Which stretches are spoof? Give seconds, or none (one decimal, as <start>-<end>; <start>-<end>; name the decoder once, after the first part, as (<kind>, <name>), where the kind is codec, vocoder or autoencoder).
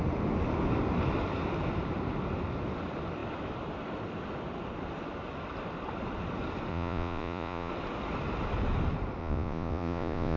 6.7-7.7 (vocoder, Vocos); 9.2-10.4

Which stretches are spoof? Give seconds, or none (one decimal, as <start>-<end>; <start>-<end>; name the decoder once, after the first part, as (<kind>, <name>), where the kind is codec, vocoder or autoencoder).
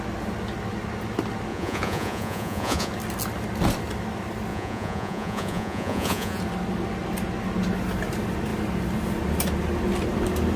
1.5-2.9 (vocoder, Vocos); 4.5-6.4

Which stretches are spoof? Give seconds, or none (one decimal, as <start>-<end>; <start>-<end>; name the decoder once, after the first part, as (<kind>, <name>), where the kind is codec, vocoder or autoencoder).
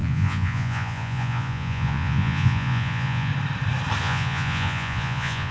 0.0-3.3 (vocoder, Vocos); 4.0-5.5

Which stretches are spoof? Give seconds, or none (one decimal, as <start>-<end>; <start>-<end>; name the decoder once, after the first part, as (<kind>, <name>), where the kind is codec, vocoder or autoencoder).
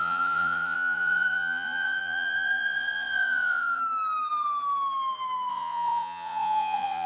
0.0-3.8 (vocoder, Vocos); 5.5-7.1